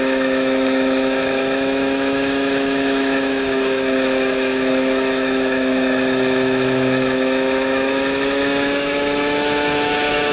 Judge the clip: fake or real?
fake